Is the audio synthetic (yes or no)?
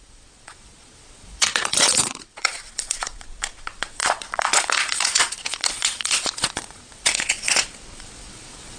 yes